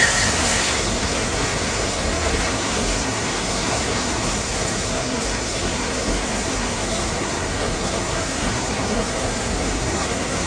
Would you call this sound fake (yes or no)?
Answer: yes